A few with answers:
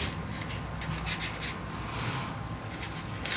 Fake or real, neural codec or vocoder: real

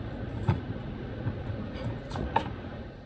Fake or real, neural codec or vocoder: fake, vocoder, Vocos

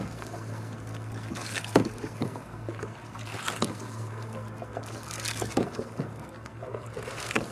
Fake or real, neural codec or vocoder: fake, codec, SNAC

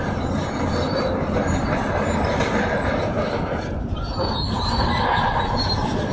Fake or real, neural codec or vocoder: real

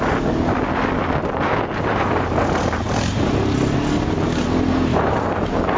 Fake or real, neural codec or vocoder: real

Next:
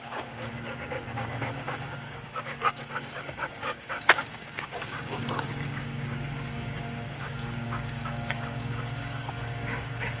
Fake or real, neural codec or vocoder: fake, codec, DAC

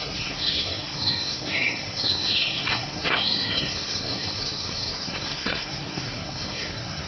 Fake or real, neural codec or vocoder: fake, codec, SNAC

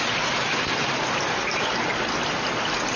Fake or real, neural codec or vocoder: real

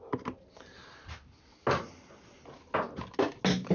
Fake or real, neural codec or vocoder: real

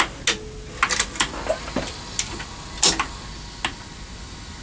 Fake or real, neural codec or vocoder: real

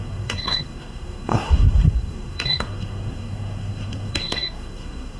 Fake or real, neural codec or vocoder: fake, codec, SNAC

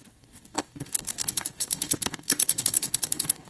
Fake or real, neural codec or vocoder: fake, codec, DAC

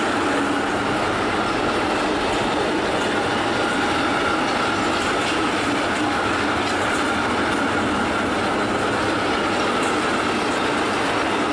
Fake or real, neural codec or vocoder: real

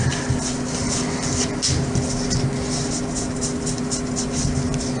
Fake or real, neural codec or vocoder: real